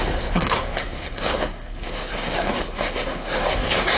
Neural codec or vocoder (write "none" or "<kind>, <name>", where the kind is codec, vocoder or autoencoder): codec, SNAC